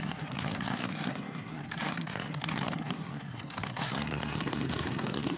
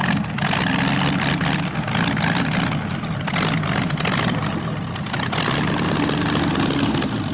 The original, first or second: second